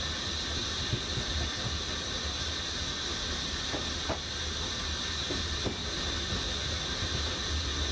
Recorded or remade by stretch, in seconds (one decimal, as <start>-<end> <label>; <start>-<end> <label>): 0.0-7.9 recorded